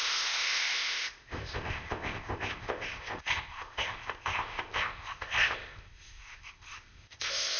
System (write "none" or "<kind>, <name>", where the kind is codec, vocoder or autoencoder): codec, ZipCodec